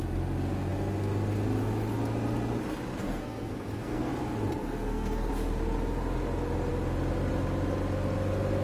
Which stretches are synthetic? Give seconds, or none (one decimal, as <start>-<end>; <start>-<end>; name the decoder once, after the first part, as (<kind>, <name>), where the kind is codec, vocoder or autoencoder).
3.0-4.1 (codec, SNAC); 4.6-5.3